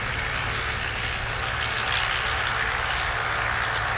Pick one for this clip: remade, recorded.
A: recorded